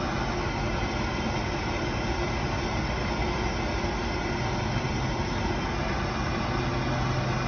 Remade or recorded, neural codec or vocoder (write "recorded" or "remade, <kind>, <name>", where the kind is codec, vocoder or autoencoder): recorded